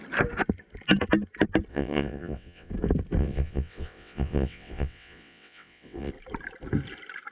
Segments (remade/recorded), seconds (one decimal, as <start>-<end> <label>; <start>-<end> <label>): 0.0-1.7 recorded; 1.7-2.7 remade; 2.7-3.2 recorded; 3.2-6.1 remade; 6.1-7.3 recorded